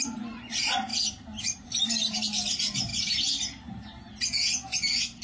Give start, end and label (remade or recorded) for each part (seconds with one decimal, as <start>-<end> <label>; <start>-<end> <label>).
0.0-5.2 recorded

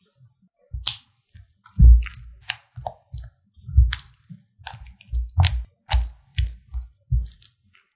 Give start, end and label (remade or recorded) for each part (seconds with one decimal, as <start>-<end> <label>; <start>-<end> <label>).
0.0-8.0 recorded

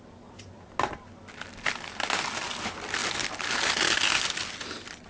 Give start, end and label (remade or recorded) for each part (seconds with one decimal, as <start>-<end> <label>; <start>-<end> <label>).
0.0-5.1 recorded

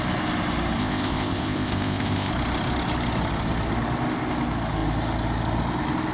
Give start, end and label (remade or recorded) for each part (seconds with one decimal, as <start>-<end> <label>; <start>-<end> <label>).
0.0-0.8 recorded; 0.8-2.3 remade; 2.3-6.1 recorded

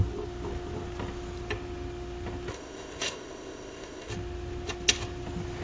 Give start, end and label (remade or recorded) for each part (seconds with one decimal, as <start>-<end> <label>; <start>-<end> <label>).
0.0-2.5 recorded; 2.5-4.1 remade; 4.1-5.6 recorded